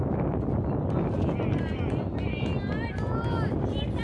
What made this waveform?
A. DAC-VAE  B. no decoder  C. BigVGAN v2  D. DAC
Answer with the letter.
B